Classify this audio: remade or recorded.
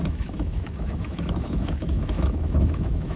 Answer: remade